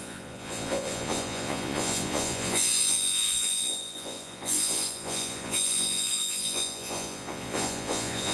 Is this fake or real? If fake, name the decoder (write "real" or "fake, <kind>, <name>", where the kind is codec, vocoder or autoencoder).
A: fake, vocoder, Vocos